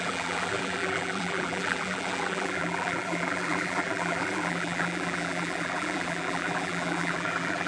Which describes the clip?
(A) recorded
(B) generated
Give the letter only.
B